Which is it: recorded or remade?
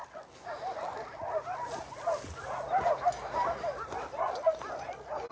recorded